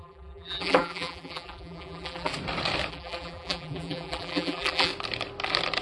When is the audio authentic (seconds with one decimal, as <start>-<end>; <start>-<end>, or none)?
2.3-2.9; 4.9-5.8